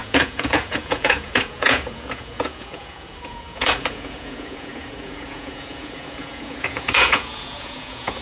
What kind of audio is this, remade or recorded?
remade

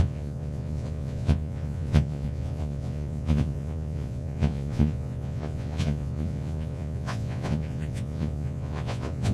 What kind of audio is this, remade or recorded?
remade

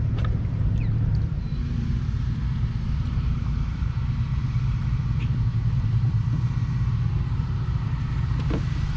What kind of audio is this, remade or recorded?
remade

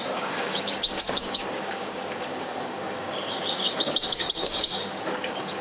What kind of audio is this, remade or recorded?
remade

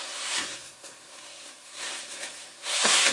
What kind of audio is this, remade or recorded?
remade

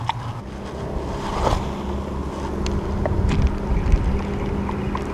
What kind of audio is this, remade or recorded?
recorded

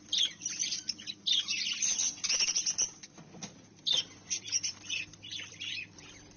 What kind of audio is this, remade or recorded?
remade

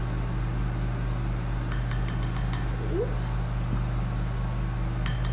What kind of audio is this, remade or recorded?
recorded